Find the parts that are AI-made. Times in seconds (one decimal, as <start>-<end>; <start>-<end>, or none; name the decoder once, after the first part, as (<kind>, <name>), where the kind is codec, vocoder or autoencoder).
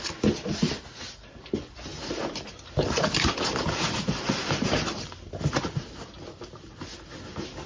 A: none